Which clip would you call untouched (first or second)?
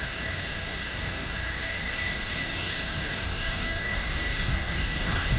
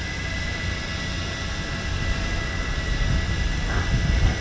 second